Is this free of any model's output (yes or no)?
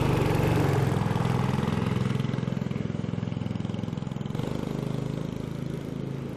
yes